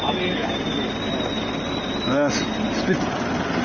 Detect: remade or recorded recorded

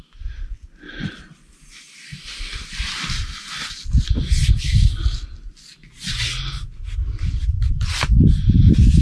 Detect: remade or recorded recorded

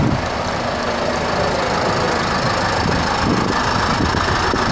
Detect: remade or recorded recorded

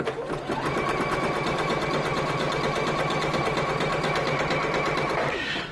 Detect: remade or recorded recorded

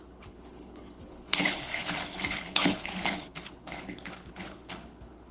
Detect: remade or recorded remade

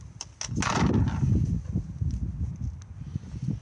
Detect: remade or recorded recorded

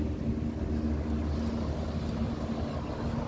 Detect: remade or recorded recorded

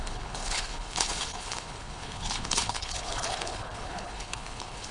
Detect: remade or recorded remade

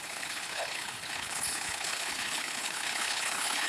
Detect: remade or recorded remade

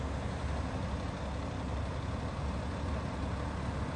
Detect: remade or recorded recorded